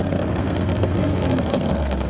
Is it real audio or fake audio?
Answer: fake